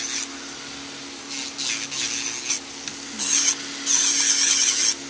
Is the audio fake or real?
real